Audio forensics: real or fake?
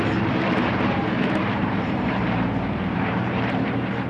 fake